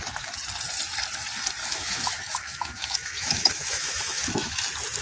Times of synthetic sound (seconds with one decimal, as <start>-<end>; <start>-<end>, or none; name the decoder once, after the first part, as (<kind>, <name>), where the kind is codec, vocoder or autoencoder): 1.6-4.6 (autoencoder, DAC-VAE)